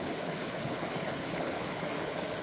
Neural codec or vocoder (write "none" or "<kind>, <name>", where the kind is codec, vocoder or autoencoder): codec, HILCodec